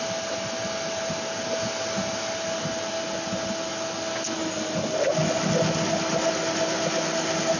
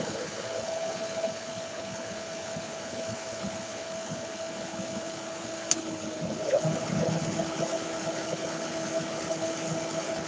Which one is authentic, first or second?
first